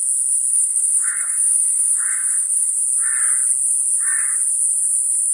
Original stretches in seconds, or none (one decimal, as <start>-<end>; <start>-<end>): 0.0-0.5; 2.8-5.3